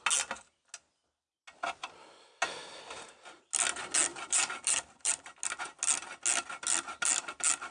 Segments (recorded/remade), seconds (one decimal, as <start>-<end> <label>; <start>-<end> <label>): 0.0-4.1 recorded; 4.1-5.4 remade; 5.4-7.7 recorded